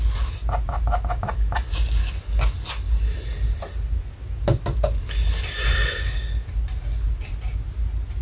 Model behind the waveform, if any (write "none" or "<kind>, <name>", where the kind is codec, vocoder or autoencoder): none